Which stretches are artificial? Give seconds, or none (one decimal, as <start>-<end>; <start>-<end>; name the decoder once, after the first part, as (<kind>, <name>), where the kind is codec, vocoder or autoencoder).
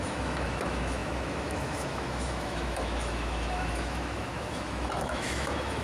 0.0-5.8 (autoencoder, DAC-VAE)